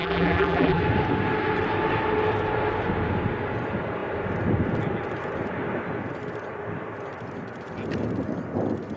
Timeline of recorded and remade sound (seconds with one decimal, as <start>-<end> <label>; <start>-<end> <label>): 0.0-0.8 remade; 0.8-9.0 recorded